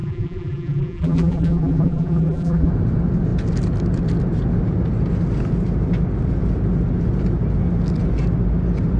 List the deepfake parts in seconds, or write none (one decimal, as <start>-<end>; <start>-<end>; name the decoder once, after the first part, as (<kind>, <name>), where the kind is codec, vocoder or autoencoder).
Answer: 0.0-2.7 (vocoder, BigVGAN v2)